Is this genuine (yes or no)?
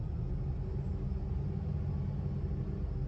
yes